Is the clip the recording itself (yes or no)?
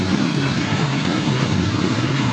no